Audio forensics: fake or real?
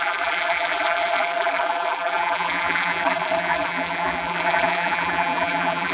fake